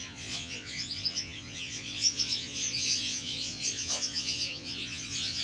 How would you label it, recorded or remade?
remade